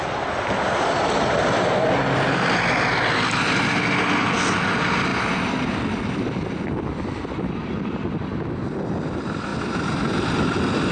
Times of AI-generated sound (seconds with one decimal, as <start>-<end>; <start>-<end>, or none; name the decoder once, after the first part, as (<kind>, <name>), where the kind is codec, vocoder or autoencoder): none